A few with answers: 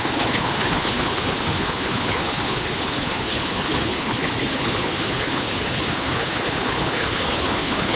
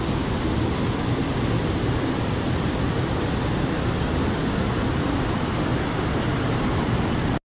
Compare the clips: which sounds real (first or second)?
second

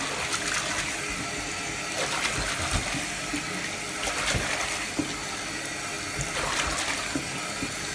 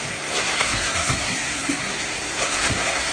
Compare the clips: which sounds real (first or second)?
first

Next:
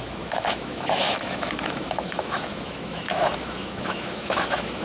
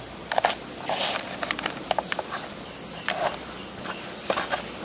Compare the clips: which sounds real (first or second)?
second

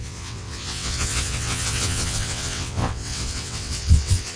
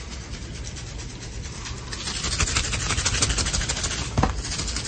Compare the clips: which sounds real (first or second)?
second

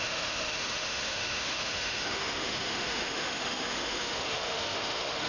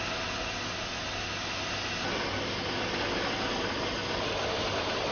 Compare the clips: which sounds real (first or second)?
second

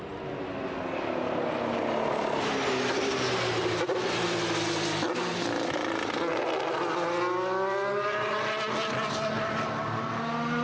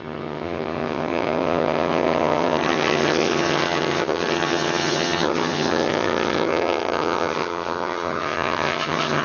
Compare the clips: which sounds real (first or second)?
first